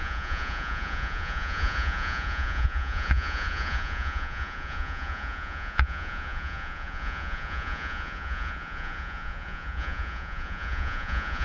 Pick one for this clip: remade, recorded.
remade